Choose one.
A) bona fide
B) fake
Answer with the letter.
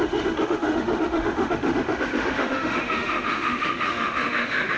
B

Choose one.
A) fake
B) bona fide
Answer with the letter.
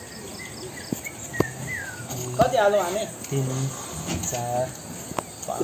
B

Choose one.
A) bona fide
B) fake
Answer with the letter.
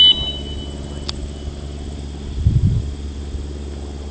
A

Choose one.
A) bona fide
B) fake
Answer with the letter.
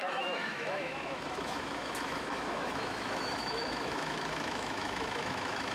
B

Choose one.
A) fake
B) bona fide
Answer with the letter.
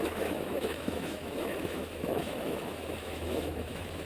A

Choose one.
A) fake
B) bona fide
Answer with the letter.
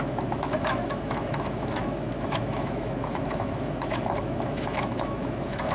A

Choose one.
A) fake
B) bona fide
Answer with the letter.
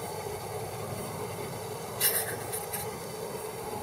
B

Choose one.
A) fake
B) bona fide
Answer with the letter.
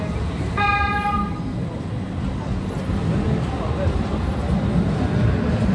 B